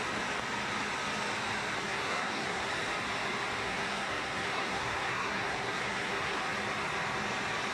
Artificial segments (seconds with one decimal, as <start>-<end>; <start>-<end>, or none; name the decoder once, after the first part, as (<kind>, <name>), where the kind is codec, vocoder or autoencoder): 1.8-2.7 (codec, SNAC); 3.6-6.4